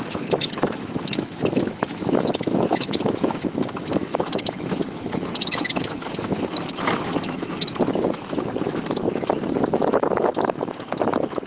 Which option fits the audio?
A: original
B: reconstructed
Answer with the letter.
B